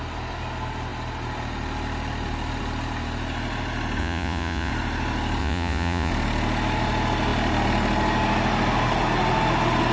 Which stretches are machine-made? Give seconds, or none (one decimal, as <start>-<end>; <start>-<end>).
4.0-4.7; 5.4-6.1